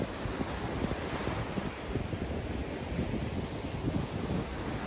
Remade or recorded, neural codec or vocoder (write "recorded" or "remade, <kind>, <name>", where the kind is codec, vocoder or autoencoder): recorded